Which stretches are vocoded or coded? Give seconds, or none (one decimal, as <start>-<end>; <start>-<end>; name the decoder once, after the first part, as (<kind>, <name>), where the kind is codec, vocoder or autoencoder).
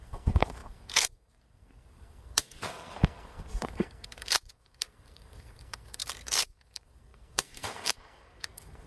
0.0-8.9 (codec, SNAC)